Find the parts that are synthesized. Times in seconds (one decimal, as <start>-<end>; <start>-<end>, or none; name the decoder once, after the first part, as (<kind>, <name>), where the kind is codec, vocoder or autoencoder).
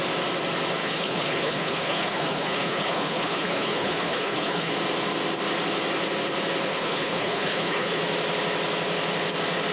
0.8-4.7 (codec, HILCodec); 6.7-8.0